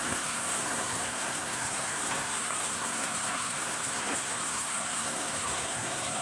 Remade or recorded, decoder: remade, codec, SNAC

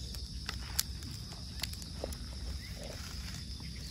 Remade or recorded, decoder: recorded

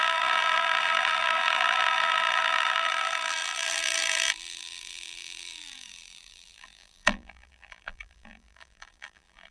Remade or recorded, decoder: remade, vocoder, BigVGAN v2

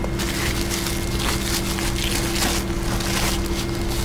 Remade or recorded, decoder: recorded